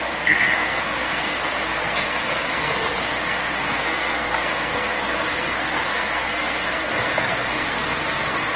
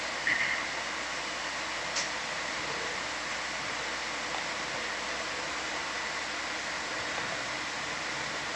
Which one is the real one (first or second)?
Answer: second